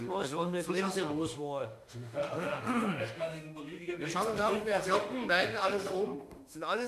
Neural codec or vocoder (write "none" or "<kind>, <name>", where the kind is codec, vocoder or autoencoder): autoencoder, DAC-VAE